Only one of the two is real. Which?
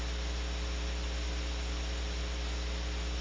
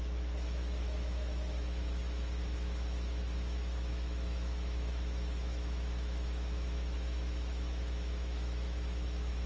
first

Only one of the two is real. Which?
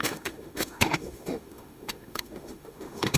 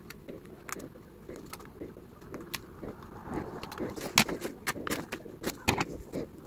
second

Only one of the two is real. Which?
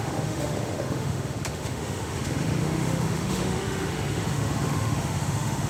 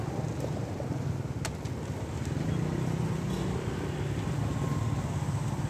second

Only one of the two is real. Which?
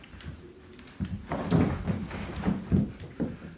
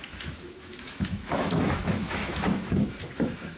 first